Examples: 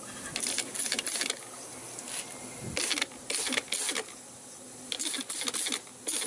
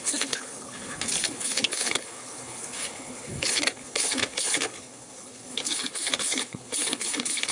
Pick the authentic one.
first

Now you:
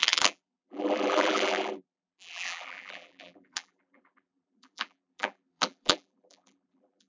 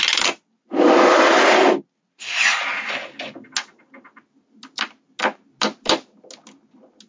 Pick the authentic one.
second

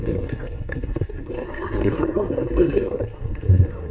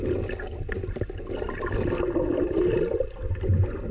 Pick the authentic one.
second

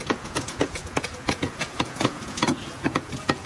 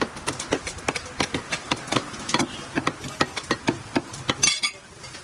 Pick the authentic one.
second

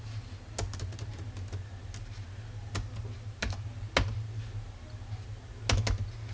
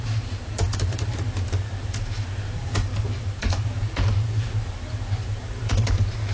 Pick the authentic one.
first